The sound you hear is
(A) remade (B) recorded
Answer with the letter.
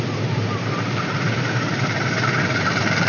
A